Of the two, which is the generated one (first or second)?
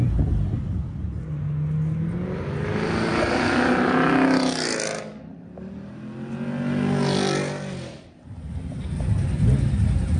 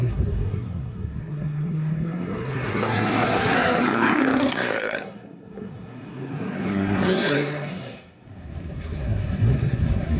second